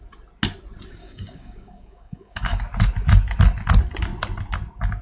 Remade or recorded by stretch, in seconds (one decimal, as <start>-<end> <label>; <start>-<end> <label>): 0.0-1.0 recorded; 1.0-2.6 remade; 2.6-5.0 recorded